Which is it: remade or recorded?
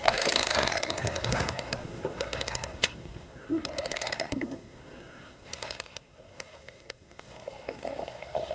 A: remade